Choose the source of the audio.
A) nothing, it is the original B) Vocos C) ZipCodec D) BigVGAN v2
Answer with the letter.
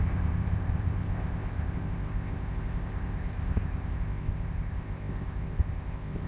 C